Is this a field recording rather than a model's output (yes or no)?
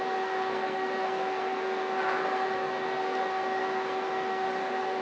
no